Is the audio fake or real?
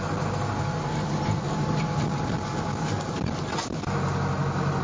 real